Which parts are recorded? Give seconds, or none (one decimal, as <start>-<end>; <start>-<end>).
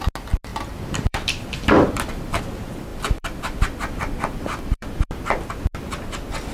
0.0-0.5; 2.4-2.9; 5.2-6.5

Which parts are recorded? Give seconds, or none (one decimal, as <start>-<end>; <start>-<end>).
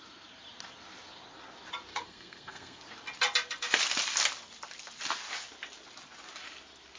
0.0-1.9; 2.8-7.0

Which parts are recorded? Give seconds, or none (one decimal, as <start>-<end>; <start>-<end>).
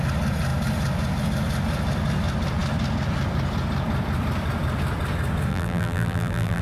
0.0-5.5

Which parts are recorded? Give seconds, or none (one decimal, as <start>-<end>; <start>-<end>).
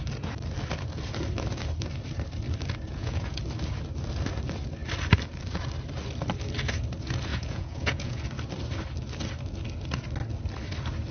0.0-2.9; 3.4-7.3; 8.2-11.1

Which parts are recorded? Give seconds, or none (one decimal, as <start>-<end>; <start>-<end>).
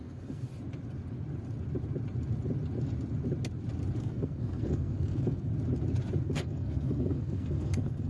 0.5-4.0; 5.5-6.2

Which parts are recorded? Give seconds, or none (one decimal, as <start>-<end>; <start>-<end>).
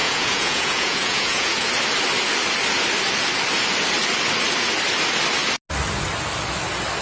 1.7-7.0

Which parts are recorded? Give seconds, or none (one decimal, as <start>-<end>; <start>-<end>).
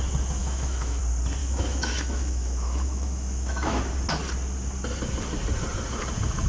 0.0-0.4; 1.0-1.4; 3.8-6.5